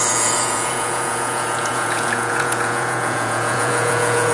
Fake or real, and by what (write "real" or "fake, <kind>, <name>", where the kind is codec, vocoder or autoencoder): fake, vocoder, Vocos